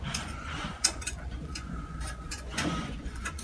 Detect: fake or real fake